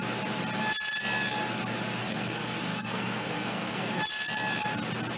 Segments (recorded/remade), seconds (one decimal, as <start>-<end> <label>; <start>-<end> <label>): 0.0-2.0 recorded; 2.0-4.0 remade; 4.0-5.2 recorded